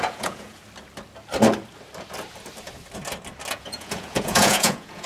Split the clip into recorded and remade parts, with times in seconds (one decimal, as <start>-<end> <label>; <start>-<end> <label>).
0.0-0.6 remade; 0.6-3.5 recorded; 3.5-5.1 remade